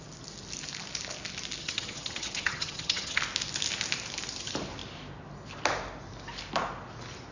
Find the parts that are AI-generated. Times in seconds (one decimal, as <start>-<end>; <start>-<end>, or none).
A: 1.6-3.2